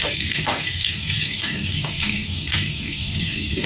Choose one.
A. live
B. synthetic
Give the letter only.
B